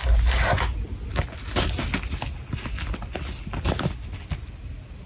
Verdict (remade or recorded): recorded